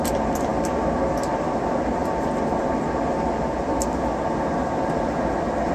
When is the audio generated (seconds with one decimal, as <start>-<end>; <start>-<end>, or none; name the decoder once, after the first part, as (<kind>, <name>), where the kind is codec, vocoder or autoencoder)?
none